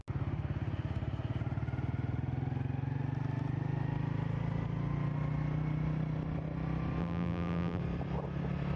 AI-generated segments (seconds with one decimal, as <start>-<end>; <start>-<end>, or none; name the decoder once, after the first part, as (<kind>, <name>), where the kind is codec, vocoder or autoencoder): 7.0-7.8 (vocoder, BigVGAN v2)